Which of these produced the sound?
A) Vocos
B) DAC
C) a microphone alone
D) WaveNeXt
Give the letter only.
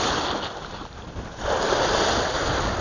C